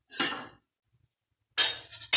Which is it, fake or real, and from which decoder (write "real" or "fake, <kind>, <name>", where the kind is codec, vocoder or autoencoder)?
real